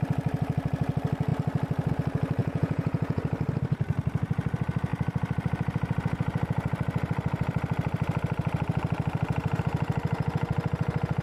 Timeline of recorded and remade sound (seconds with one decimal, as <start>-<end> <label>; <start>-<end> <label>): 0.0-2.4 recorded; 2.4-3.2 remade; 3.2-11.2 recorded